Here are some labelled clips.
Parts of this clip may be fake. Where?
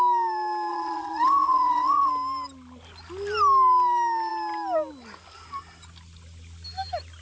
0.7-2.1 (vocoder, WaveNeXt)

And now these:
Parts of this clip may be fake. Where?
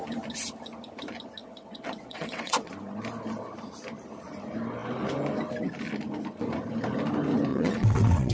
1.4-2.7 (vocoder, WaveNeXt); 7.5-8.3